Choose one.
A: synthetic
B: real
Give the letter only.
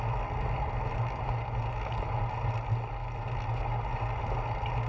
B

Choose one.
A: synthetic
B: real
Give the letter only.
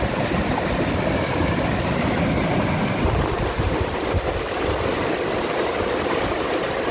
B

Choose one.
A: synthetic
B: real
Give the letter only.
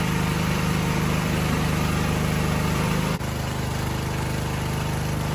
A